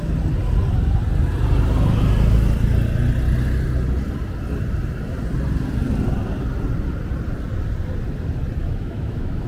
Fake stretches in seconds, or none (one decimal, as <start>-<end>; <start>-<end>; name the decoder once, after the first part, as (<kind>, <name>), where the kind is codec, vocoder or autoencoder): 8.6-9.5 (autoencoder, DAC-VAE)